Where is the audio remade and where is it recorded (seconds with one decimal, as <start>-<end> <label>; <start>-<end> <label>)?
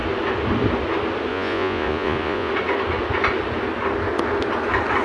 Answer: 0.0-1.3 recorded; 1.3-2.5 remade; 2.5-5.0 recorded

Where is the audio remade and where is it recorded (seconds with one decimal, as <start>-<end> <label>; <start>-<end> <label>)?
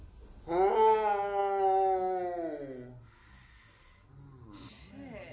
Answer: 0.0-5.3 recorded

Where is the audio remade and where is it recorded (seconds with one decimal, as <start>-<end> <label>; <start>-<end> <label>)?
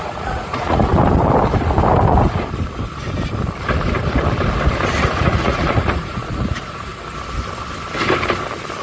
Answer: 0.0-0.9 remade; 0.9-5.0 recorded; 5.0-6.9 remade; 6.9-8.8 recorded